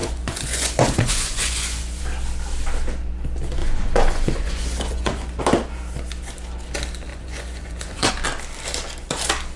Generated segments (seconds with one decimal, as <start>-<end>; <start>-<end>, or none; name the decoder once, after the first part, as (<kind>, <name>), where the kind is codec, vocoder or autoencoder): 0.0-2.0 (vocoder, Vocos); 3.6-5.4; 7.1-8.1